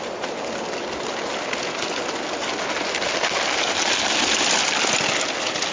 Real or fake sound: real